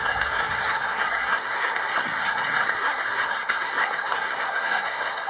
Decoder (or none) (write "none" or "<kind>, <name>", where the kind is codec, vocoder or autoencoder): codec, SNAC